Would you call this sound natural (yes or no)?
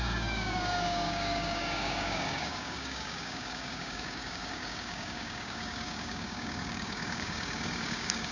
no